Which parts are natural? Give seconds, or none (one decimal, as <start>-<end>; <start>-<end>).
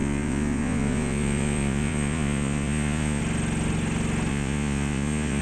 3.2-4.3